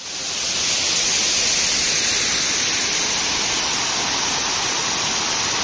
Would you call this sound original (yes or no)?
yes